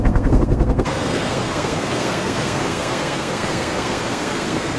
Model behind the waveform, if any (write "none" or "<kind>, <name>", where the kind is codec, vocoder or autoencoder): codec, SNAC